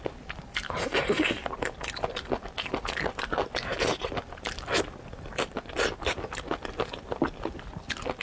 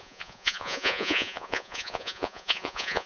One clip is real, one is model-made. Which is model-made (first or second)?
second